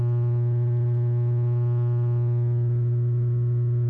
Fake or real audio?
real